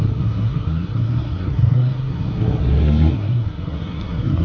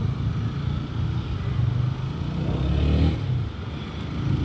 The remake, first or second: first